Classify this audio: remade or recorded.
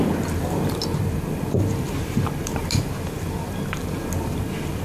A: remade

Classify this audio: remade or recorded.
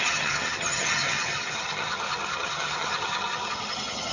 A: remade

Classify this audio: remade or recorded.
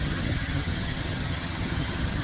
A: remade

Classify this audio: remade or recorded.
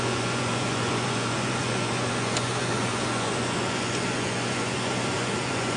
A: remade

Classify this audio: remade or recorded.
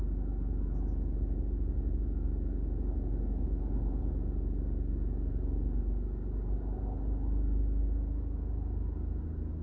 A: recorded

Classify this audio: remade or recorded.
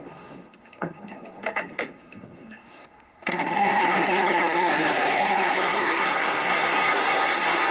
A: remade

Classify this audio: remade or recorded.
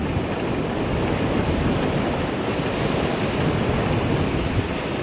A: recorded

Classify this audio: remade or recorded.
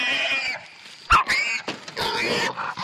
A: recorded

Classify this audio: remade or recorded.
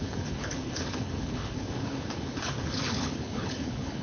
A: remade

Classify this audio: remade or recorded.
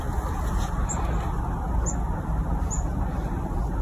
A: recorded